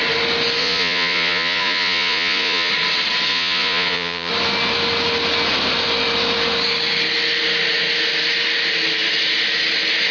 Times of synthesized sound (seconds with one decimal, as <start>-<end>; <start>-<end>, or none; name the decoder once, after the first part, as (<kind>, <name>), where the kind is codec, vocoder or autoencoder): 0.6-2.7 (vocoder, Vocos); 3.3-4.3